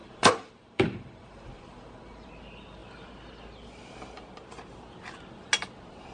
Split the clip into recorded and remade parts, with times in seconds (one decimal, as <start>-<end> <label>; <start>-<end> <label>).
0.0-2.3 remade; 2.3-6.1 recorded